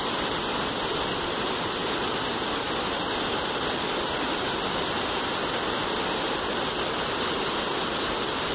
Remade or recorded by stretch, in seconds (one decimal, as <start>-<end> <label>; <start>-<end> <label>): 0.0-8.5 recorded